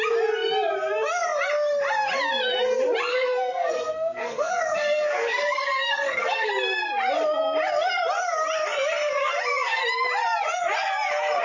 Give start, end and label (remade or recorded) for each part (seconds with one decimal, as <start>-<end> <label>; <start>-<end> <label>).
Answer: 0.0-3.1 recorded; 3.1-6.5 remade; 6.5-11.4 recorded